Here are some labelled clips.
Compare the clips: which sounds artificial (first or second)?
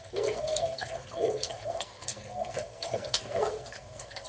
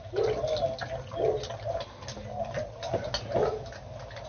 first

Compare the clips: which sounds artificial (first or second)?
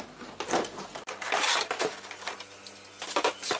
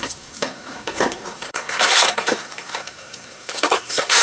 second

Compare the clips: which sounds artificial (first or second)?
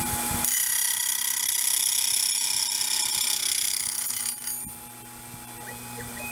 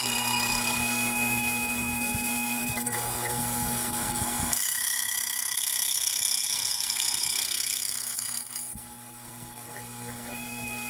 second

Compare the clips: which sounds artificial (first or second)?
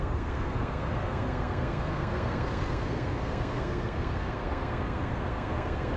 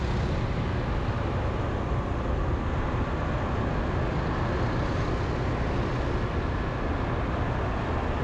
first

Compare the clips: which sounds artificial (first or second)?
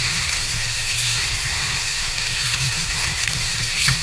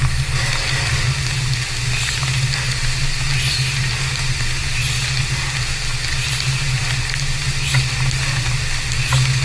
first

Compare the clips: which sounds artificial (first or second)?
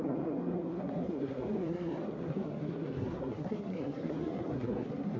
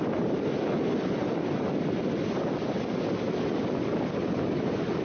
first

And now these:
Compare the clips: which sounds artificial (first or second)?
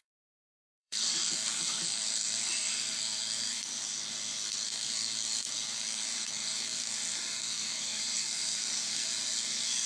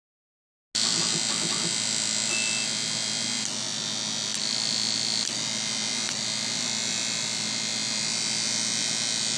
first